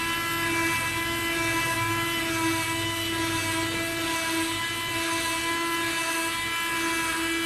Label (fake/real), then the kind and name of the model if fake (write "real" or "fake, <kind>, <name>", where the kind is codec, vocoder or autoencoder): real